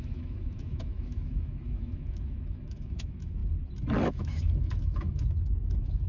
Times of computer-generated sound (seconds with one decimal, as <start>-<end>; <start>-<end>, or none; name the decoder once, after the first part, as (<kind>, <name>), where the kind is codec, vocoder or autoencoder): 0.0-3.4 (autoencoder, DAC-VAE); 4.1-6.1